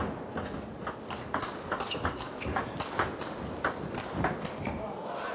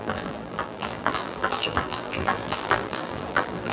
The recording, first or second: first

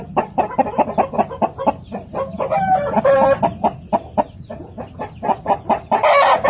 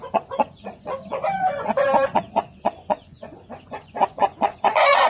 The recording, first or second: first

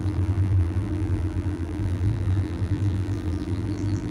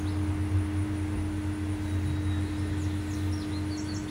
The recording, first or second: second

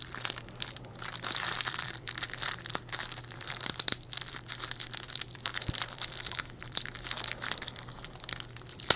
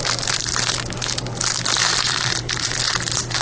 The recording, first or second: second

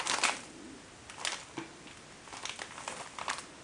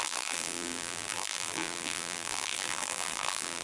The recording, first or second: first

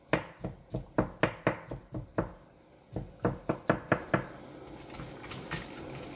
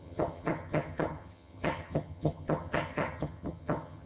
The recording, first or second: first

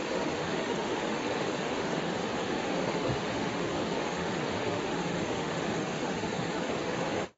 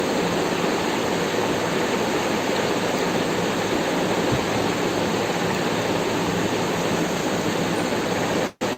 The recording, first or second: second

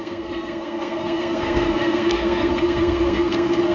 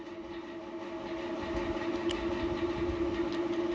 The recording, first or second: second